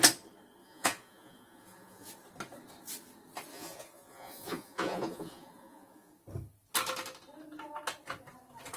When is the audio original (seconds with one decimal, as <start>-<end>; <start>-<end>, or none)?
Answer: 0.0-0.6; 2.1-3.5; 6.1-8.8